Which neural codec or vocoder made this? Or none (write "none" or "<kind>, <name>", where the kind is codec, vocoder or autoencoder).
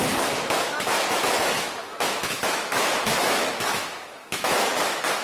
autoencoder, DAC-VAE